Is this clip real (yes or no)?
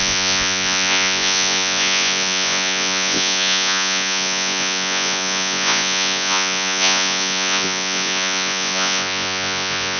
no